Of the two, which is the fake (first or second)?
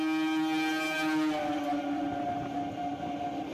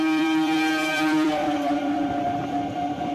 second